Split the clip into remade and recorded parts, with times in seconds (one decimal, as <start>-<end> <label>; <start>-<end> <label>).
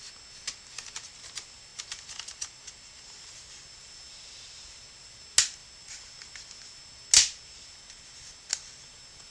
0.0-9.3 recorded